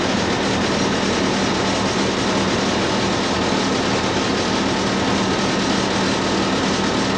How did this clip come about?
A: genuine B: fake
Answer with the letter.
A